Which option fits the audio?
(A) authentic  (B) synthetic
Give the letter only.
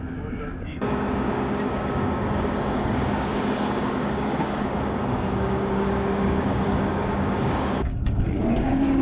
B